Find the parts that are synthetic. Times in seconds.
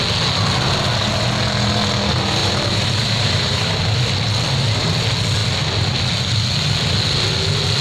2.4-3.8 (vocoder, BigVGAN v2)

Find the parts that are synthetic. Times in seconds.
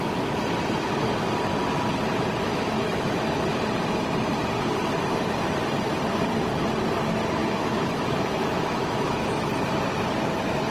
2.5-3.4 (autoencoder, DAC-VAE); 7.4-9.5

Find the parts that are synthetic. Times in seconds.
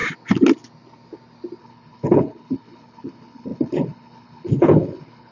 1.6-5.3 (codec, HILCodec)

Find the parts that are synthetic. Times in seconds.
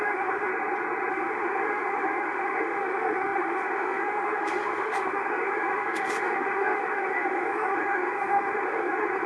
0.0-0.5 (autoencoder, DAC-VAE); 1.1-9.3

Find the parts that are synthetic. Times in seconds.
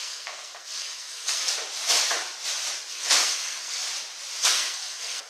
0.0-1.5 (codec, SNAC); 2.9-3.8; 4.4-5.3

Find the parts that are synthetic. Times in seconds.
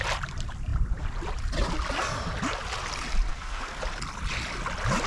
3.3-3.8 (codec, SNAC)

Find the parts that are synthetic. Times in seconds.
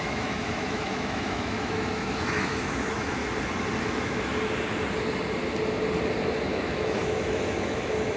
0.0-3.2 (autoencoder, DAC-VAE); 3.8-4.3; 6.5-8.2